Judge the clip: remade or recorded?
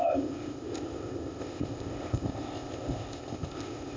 remade